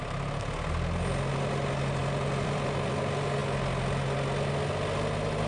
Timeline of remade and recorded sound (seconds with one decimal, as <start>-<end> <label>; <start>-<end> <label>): 0.0-2.0 recorded; 2.0-3.0 remade; 3.0-5.5 recorded